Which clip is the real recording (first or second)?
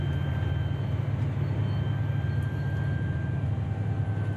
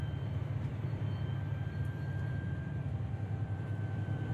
first